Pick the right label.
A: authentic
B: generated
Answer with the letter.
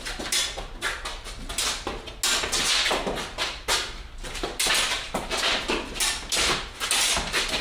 A